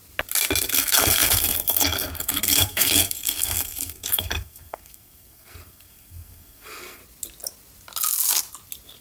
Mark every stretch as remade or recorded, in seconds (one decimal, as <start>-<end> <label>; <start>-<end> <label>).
0.0-0.7 recorded; 0.7-7.0 remade; 7.0-9.0 recorded